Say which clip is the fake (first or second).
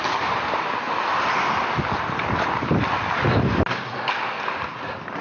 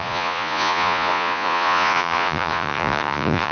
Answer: second